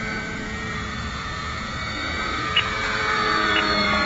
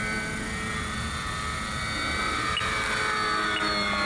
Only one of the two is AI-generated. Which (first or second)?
first